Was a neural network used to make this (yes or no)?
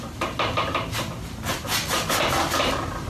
no